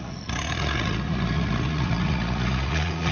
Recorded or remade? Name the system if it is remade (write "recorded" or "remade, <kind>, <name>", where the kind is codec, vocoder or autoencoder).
remade, vocoder, Vocos